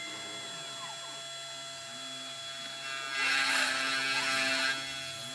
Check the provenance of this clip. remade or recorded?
recorded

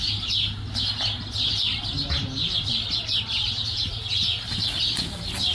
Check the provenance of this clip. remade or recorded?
recorded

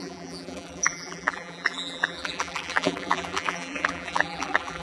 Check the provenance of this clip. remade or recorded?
remade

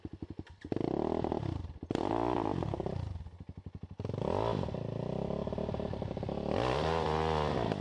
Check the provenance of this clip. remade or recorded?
recorded